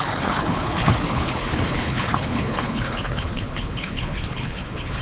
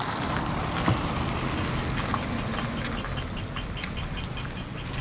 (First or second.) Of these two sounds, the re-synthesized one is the first